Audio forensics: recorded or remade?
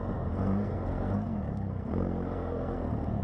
remade